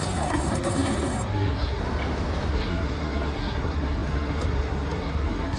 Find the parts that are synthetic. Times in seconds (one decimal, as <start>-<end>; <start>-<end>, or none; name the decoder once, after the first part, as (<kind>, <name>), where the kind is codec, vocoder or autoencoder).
0.0-1.8 (codec, SNAC); 2.5-5.6